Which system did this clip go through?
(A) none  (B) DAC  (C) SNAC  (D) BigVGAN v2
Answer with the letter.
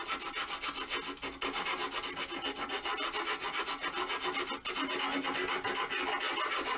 A